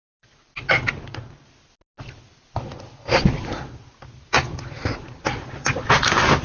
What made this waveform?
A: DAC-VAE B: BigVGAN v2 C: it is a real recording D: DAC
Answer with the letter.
C